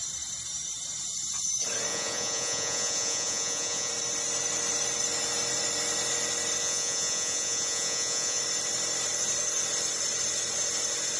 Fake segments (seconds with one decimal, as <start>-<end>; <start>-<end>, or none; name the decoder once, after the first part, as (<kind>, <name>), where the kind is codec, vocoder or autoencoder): 1.9-3.9 (vocoder, Vocos); 6.6-8.4